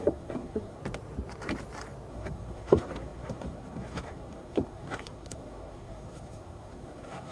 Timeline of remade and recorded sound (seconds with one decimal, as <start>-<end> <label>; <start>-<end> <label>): 0.0-0.8 remade; 0.8-2.1 recorded; 2.1-7.3 remade